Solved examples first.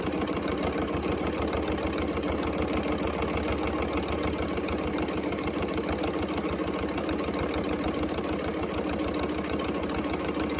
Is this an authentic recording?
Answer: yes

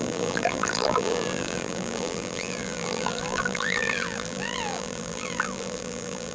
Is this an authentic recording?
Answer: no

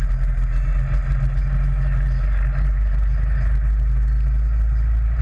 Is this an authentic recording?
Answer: yes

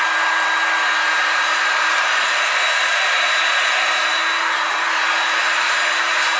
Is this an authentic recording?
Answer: no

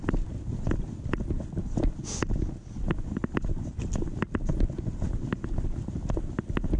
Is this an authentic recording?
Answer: yes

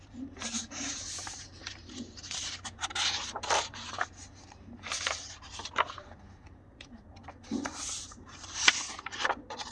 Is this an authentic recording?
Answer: no